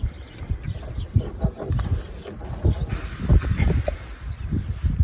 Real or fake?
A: real